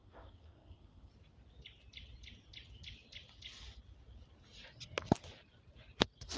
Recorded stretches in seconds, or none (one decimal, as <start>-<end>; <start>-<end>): 1.1-6.4